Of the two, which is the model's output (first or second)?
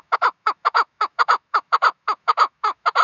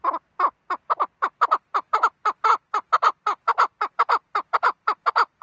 first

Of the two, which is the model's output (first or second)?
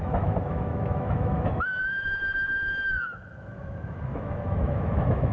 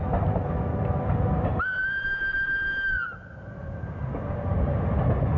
first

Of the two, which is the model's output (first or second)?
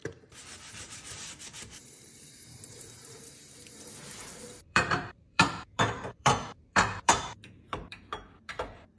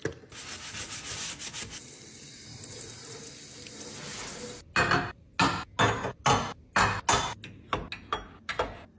first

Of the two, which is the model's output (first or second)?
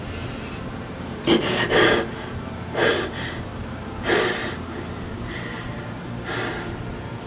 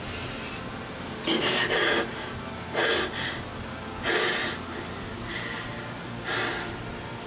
first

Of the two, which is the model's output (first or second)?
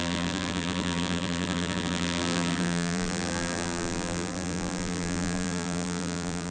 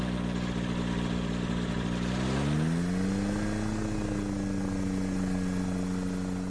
first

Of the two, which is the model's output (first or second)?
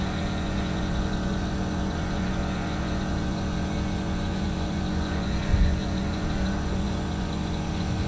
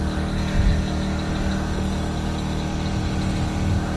first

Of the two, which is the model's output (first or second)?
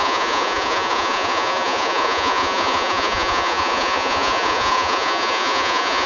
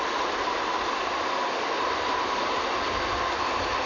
first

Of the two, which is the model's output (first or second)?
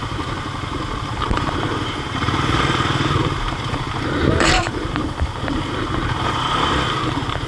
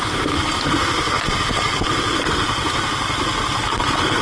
first